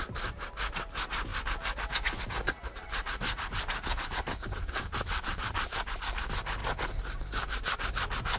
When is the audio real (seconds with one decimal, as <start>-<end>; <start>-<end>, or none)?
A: 1.3-2.2